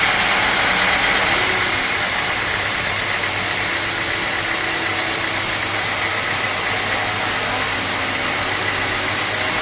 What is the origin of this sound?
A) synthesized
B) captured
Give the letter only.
B